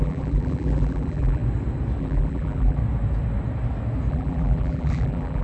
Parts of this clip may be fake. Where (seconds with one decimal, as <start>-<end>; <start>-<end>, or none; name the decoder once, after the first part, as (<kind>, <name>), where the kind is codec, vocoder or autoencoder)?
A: 0.0-1.4 (vocoder, BigVGAN v2); 2.0-2.8; 4.1-5.4